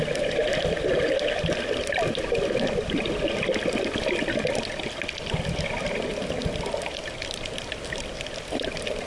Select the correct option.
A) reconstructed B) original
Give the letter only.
B